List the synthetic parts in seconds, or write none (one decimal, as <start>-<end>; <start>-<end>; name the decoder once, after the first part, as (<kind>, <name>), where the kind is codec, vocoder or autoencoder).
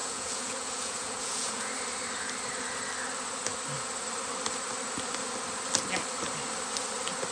0.0-1.7 (vocoder, Vocos)